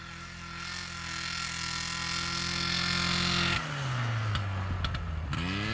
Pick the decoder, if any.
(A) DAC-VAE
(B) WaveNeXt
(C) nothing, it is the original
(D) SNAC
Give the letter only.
C